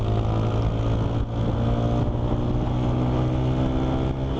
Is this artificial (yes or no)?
no